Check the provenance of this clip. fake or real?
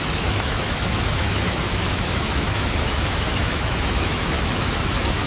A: fake